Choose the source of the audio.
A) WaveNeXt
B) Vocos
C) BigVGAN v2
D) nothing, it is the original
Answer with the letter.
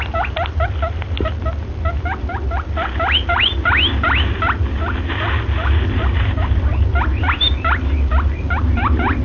D